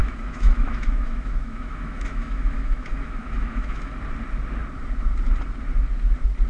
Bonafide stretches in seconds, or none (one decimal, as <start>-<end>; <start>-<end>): 3.9-6.5